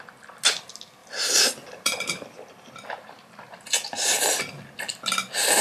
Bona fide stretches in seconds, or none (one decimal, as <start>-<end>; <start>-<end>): 0.0-1.0; 4.4-5.6

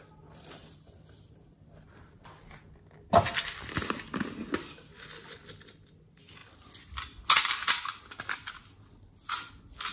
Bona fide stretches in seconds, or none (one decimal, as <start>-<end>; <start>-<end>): 0.0-9.9

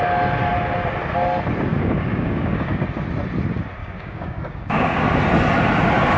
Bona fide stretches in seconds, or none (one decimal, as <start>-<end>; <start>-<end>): 0.0-1.7; 2.8-3.8; 5.0-6.2

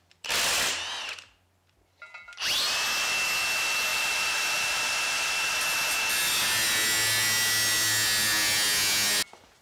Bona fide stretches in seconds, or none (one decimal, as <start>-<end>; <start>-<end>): 0.0-3.9; 5.3-9.6

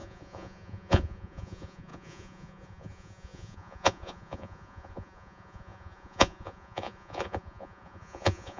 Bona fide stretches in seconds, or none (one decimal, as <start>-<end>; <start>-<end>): none